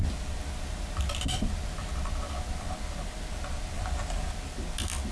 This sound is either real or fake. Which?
real